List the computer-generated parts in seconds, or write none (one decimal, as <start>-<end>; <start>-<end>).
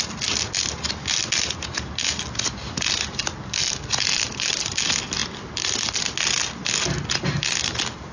none